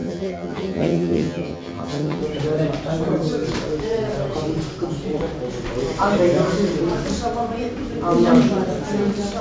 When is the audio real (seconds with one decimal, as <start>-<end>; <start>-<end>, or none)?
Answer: 2.2-9.4